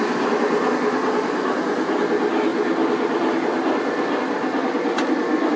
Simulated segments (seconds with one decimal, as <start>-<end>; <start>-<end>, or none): none